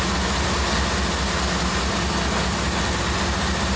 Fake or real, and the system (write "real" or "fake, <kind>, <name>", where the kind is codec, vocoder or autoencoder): real